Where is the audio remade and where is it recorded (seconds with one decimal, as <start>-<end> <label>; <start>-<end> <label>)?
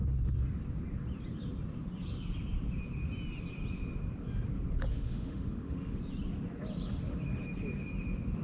0.0-4.9 recorded; 4.9-6.0 remade; 6.0-8.4 recorded